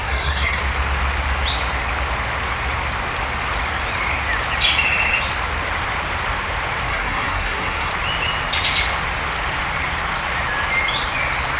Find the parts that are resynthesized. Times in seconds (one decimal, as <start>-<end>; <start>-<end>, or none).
0.0-0.6; 6.9-7.9